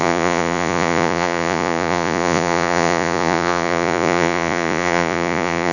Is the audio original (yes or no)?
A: no